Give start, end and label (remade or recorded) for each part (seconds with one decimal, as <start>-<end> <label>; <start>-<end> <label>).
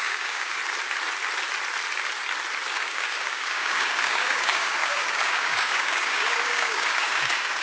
0.0-0.6 remade; 0.6-2.7 recorded; 2.7-7.6 remade